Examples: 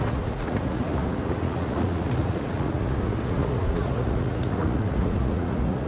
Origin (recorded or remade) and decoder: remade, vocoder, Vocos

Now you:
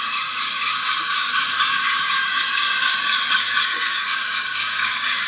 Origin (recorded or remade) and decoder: remade, codec, DAC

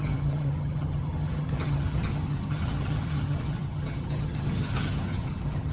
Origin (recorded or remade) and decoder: remade, vocoder, HiFi-GAN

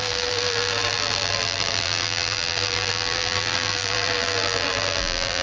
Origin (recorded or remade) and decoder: remade, vocoder, BigVGAN v2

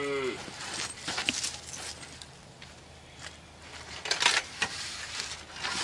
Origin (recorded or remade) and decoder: recorded